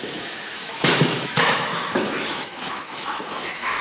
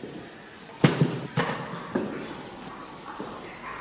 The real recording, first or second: second